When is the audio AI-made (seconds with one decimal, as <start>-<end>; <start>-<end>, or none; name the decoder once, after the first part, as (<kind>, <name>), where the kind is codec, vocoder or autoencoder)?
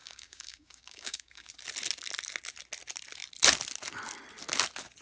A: 0.0-1.5 (codec, DAC)